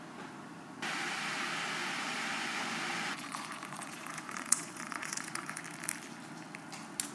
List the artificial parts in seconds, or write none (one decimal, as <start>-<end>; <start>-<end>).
1.8-5.6